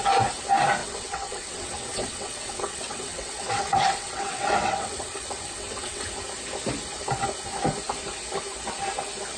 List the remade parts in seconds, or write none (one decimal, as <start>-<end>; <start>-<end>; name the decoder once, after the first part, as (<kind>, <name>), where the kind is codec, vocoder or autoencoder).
0.8-6.1 (vocoder, WaveNeXt)